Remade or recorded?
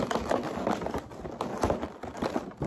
recorded